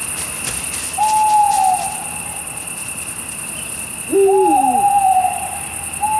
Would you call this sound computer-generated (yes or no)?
no